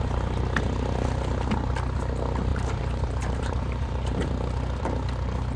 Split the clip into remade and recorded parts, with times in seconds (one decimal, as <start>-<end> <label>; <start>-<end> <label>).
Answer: 0.0-2.5 recorded; 2.5-4.3 remade; 4.3-5.6 recorded